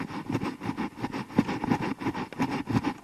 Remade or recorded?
recorded